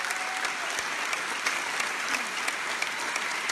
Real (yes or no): yes